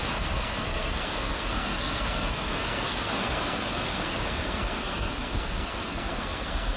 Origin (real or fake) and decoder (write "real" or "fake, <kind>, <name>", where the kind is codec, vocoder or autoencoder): fake, codec, SNAC